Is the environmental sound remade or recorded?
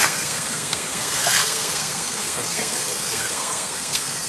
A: remade